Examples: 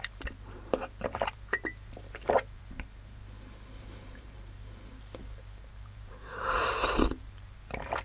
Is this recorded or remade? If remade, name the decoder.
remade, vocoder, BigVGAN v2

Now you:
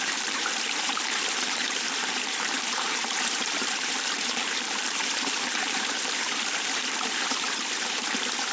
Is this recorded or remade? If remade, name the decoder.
remade, vocoder, BigVGAN v2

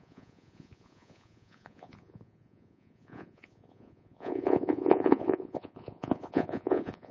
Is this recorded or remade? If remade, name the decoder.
remade, vocoder, Vocos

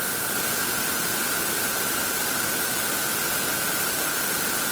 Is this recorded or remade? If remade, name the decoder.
remade, vocoder, BigVGAN v2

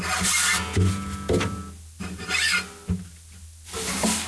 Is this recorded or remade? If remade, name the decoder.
recorded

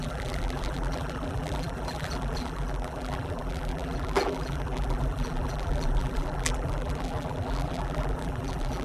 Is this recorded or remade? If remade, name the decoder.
remade, vocoder, BigVGAN v2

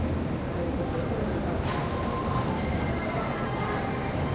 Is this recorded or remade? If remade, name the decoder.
recorded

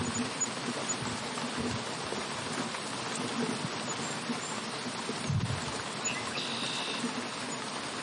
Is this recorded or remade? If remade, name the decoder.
recorded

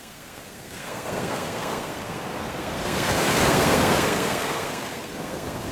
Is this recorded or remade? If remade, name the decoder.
remade, codec, SNAC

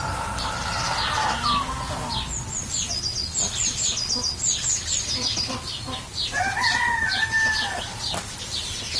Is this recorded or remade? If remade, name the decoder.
recorded